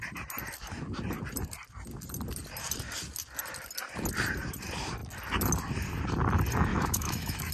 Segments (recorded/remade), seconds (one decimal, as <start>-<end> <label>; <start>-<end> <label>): 0.0-6.7 recorded; 6.7-7.5 remade